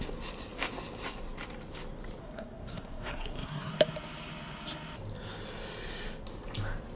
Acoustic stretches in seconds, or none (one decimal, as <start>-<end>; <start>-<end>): 0.0-2.2; 3.7-7.0